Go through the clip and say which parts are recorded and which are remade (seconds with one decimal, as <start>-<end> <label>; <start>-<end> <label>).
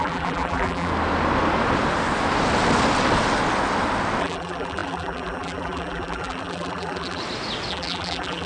0.0-0.9 remade; 0.9-4.2 recorded; 4.2-7.2 remade; 7.2-7.7 recorded; 7.7-8.5 remade